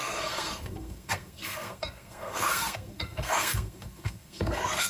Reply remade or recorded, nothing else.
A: remade